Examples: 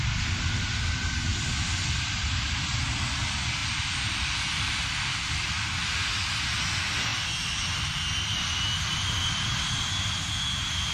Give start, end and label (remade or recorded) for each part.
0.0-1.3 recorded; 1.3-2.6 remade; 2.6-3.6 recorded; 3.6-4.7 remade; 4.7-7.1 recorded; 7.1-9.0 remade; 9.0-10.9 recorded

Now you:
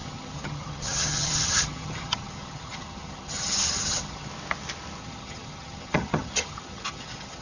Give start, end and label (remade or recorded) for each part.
0.0-4.3 remade; 4.3-5.0 recorded; 5.0-7.4 remade

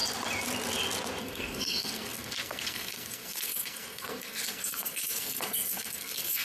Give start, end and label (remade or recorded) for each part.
0.0-1.2 recorded; 1.2-6.4 remade

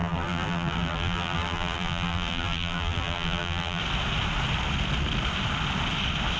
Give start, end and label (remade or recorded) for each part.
0.0-3.8 remade; 3.8-6.4 recorded